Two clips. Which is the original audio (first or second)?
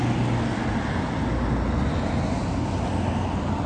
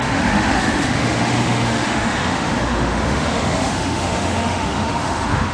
first